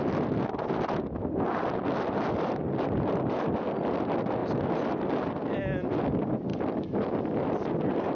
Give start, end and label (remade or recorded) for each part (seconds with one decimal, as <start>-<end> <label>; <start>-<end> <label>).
0.0-8.2 recorded

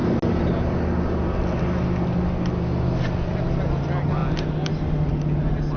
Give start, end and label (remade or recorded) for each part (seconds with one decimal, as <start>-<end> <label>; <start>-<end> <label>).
0.0-5.8 recorded

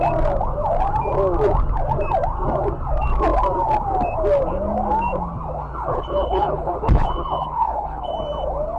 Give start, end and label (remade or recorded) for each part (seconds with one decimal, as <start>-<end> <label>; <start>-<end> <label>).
0.0-5.8 recorded; 5.8-8.1 remade; 8.1-8.8 recorded

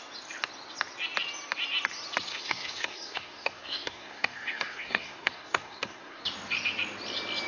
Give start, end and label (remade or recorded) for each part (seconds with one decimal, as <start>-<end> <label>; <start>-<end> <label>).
0.0-2.3 recorded; 2.3-6.2 remade; 6.2-7.5 recorded

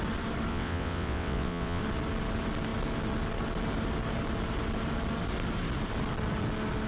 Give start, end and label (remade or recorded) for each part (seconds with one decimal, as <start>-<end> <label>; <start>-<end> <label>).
0.0-0.5 recorded; 0.5-1.8 remade; 1.8-6.9 recorded

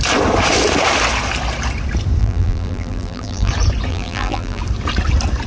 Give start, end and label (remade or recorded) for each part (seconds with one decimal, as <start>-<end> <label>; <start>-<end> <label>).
0.0-2.2 recorded; 2.2-3.5 remade; 3.5-3.9 recorded; 3.9-4.6 remade; 4.6-5.5 recorded

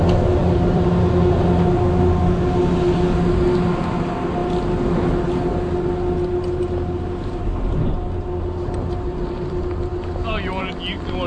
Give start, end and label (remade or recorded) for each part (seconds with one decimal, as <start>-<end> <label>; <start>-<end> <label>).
0.0-0.4 recorded; 0.4-1.1 remade; 1.1-11.3 recorded

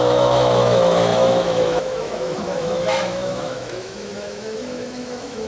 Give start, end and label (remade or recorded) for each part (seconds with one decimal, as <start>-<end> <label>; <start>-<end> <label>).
0.0-5.5 remade